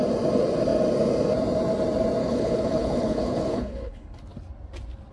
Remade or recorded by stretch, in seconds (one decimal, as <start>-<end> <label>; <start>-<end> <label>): 0.0-2.2 recorded; 2.2-4.2 remade; 4.2-5.1 recorded